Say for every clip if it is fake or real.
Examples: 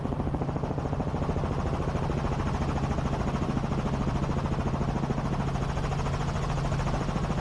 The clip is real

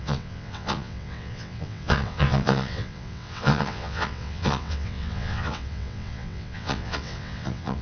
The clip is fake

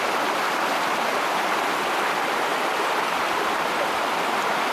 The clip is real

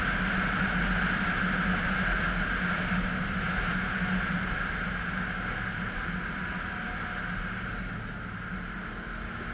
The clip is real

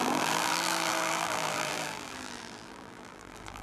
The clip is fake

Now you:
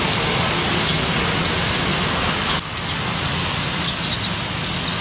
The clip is real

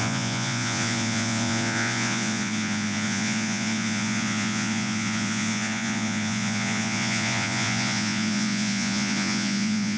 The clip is fake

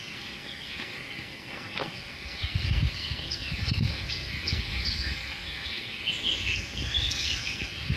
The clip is fake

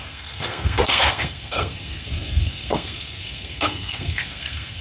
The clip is fake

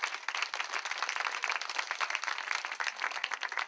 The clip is real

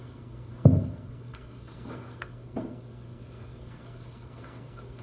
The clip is fake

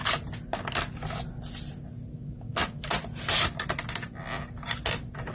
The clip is real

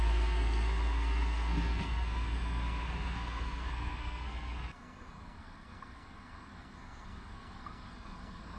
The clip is fake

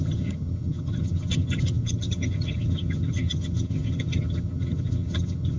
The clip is fake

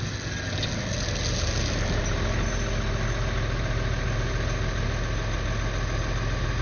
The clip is real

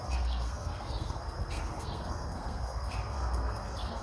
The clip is fake